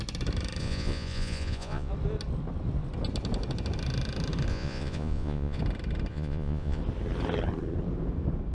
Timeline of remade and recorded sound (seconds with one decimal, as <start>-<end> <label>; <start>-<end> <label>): 0.0-0.6 recorded; 0.6-1.9 remade; 1.9-4.5 recorded; 4.5-5.6 remade; 5.6-6.1 recorded; 6.1-6.8 remade; 6.8-8.5 recorded